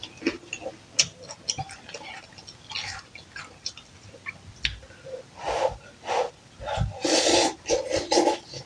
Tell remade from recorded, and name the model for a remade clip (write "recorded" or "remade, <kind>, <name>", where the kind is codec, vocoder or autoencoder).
recorded